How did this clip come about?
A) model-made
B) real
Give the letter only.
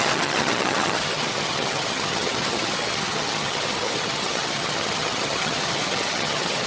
A